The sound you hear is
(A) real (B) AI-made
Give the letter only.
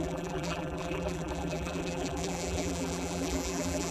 B